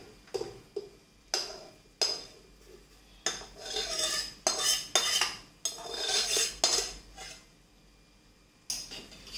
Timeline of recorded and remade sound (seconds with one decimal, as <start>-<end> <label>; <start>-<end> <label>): 0.0-5.9 recorded; 5.9-6.6 remade; 6.6-9.4 recorded

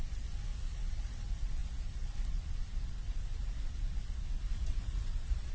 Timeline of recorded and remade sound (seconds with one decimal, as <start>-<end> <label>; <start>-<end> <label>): 0.0-0.5 recorded; 0.5-1.2 remade; 1.2-4.5 recorded; 4.5-5.5 remade

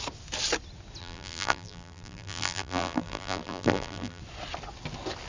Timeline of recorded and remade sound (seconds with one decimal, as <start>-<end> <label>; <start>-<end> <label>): 0.0-1.0 recorded; 1.0-4.2 remade; 4.2-5.3 recorded

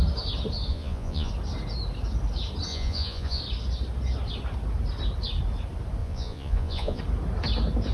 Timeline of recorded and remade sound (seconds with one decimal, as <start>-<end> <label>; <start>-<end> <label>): 0.0-0.7 recorded; 0.7-1.3 remade; 1.3-2.7 recorded; 2.7-3.4 remade; 3.4-6.0 recorded; 6.0-7.0 remade; 7.0-7.9 recorded

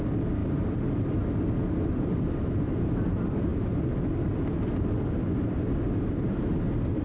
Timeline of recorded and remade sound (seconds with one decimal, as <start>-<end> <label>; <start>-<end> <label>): 0.0-7.0 recorded

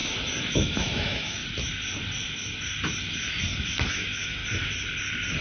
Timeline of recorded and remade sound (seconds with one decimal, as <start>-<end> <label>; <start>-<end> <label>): 0.0-0.5 recorded; 0.5-1.4 remade; 1.4-3.9 recorded; 3.9-4.4 remade; 4.4-5.4 recorded